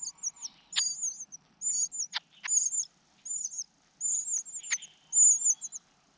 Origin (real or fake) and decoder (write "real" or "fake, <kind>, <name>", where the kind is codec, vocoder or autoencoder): real